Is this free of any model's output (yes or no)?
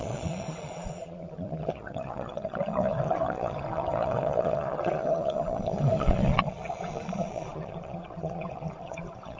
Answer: no